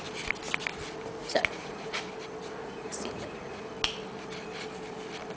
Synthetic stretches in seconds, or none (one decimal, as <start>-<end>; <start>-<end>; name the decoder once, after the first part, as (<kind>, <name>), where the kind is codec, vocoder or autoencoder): 1.2-2.0 (vocoder, Vocos); 2.6-3.6